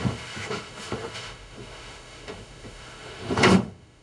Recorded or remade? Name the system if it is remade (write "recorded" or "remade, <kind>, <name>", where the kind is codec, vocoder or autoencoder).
remade, autoencoder, DAC-VAE